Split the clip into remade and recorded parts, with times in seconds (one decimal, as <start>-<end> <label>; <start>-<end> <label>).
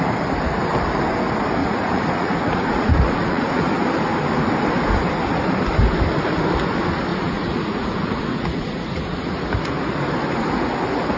0.0-1.6 recorded; 1.6-3.7 remade; 3.7-7.1 recorded; 7.1-9.3 remade; 9.3-11.2 recorded